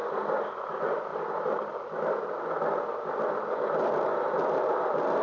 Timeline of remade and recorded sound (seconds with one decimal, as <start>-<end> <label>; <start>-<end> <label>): 0.0-5.2 recorded